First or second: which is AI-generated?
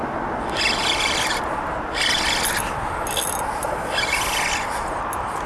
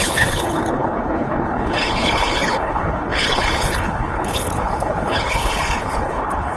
second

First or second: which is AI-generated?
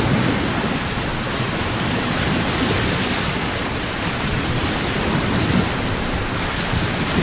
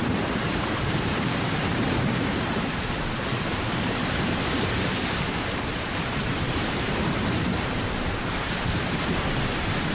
second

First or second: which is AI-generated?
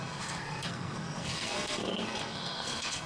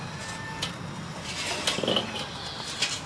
first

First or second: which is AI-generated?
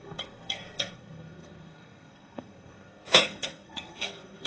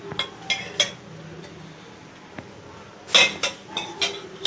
first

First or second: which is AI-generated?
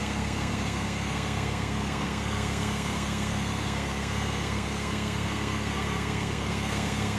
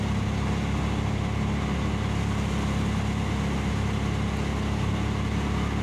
first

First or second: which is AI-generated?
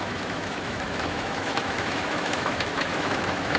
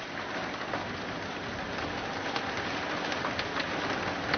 first